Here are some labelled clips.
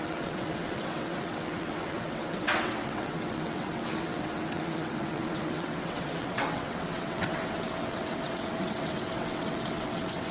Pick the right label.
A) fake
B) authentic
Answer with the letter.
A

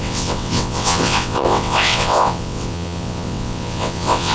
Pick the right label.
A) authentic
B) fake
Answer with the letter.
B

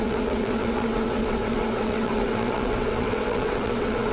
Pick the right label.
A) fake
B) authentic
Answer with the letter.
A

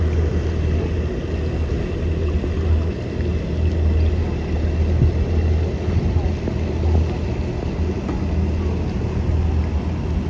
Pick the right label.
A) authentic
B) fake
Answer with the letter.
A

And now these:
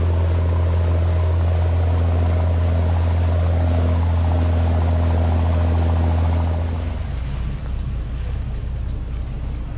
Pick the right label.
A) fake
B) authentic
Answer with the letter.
B